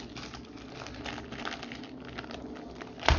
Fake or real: real